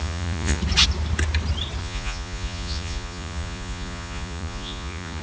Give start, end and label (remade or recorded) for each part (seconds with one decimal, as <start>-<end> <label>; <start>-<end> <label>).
0.0-0.6 remade; 0.6-1.8 recorded; 1.8-5.2 remade